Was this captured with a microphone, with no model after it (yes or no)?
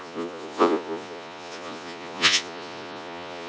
no